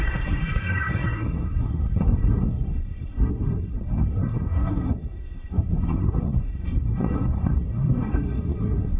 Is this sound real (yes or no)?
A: no